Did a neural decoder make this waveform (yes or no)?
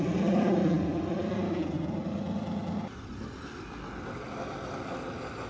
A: no